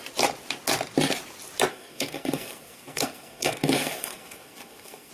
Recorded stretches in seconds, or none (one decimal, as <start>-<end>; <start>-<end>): 0.0-1.7